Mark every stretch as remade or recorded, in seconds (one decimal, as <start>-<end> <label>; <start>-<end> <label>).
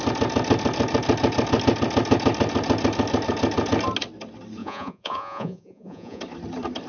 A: 0.0-4.6 recorded; 4.6-6.2 remade; 6.2-6.9 recorded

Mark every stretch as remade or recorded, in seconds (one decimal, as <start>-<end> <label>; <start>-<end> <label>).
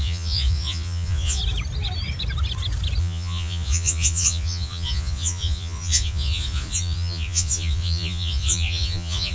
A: 0.0-1.4 remade; 1.4-3.0 recorded; 3.0-9.3 remade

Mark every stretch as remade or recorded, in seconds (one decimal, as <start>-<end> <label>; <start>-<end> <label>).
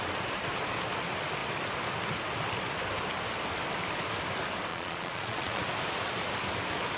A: 0.0-4.7 recorded; 4.7-5.6 remade; 5.6-7.0 recorded